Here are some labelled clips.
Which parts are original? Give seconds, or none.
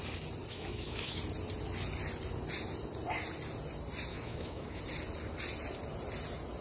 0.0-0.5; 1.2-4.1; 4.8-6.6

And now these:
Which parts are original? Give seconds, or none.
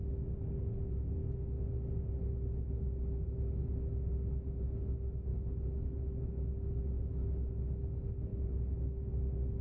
0.0-1.2; 1.7-8.3; 9.1-9.6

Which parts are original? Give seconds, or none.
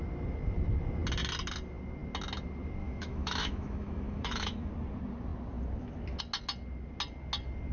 0.0-2.8; 4.7-7.7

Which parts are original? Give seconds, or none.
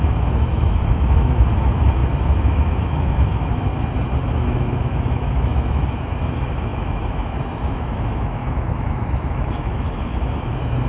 3.7-4.3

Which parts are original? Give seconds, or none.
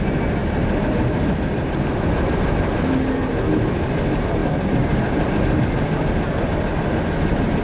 0.0-7.6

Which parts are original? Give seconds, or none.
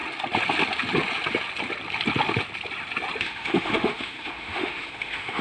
0.0-3.2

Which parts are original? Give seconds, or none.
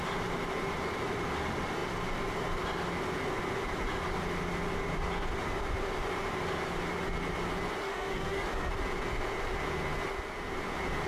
0.0-7.8; 8.7-11.1